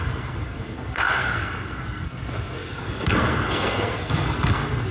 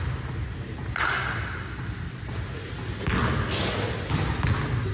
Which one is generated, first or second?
first